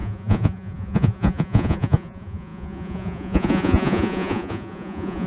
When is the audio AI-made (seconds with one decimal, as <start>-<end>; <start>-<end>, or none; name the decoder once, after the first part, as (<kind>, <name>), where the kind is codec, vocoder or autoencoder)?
0.0-5.3 (vocoder, Vocos)